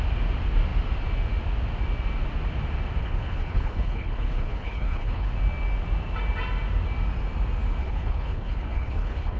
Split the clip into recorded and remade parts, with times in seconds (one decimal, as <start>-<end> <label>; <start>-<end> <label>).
0.0-3.0 recorded; 3.0-5.3 remade; 5.3-7.8 recorded; 7.8-9.4 remade